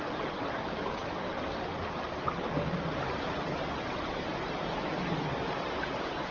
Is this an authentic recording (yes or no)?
yes